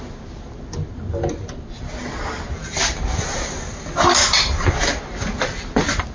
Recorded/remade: recorded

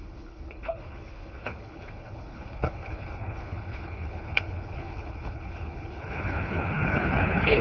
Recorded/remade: remade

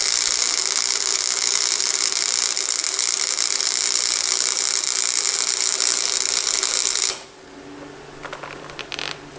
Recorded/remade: recorded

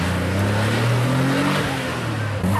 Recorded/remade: recorded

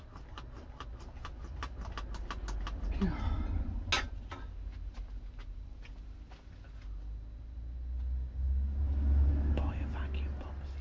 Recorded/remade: recorded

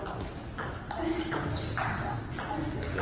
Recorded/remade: recorded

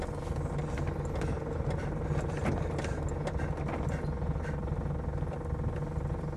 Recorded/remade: recorded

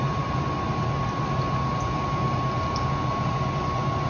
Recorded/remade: recorded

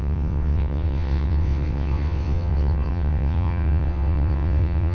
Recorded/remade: remade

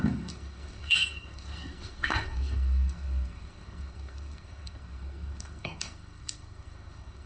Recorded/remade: remade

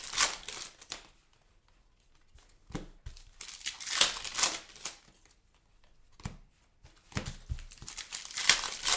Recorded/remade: recorded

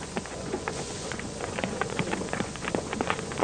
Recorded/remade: remade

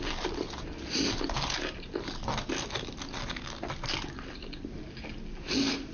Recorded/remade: recorded